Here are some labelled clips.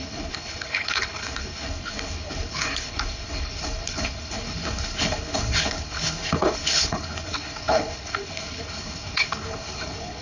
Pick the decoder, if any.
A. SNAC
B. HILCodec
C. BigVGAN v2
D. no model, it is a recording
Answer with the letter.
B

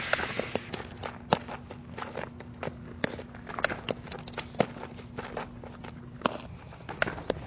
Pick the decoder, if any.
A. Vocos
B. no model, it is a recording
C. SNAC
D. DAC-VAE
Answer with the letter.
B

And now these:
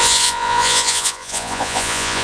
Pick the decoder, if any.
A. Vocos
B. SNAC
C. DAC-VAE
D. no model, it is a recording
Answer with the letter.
A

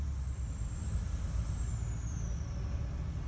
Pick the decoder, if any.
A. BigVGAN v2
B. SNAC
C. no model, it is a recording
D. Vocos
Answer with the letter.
C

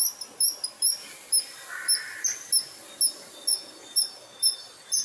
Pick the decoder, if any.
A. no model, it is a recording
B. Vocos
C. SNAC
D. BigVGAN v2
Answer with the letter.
A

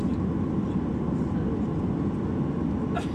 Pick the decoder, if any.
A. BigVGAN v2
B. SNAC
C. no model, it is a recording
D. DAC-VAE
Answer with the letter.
C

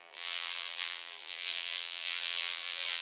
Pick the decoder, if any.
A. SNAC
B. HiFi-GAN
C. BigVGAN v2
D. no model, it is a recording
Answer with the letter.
C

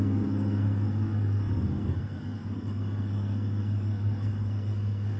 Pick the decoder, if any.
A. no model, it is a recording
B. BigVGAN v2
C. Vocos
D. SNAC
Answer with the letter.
D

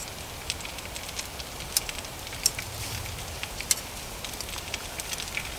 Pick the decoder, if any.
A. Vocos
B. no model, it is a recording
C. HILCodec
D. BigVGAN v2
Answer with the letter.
B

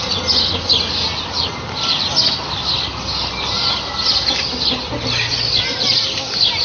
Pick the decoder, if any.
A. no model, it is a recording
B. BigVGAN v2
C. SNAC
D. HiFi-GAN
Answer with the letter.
A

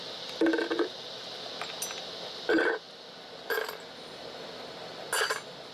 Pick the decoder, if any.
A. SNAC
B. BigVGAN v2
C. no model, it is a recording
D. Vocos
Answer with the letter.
C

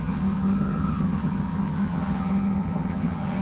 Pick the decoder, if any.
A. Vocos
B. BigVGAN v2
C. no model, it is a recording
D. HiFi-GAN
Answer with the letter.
D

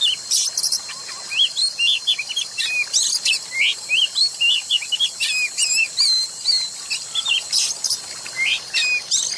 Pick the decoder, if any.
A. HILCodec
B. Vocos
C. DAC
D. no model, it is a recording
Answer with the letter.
D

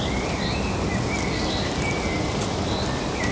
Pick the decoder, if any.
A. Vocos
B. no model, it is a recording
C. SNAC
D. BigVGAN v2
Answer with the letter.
B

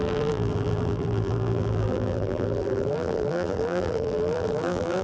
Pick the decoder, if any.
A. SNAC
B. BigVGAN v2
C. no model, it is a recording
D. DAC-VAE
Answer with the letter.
B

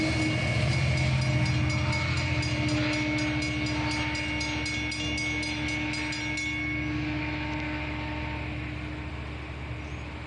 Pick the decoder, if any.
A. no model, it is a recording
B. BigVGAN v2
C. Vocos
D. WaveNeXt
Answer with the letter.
A